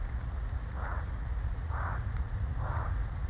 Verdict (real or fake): fake